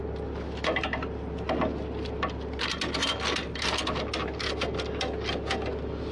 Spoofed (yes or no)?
no